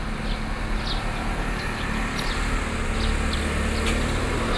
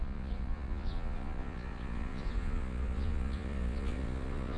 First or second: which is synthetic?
second